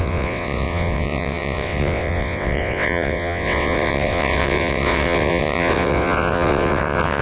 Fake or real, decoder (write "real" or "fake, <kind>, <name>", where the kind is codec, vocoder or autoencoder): fake, vocoder, WaveNeXt